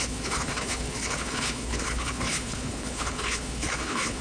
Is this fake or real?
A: fake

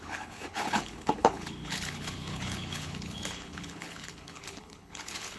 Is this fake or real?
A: fake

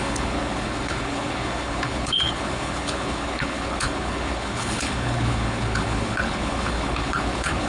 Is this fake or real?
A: fake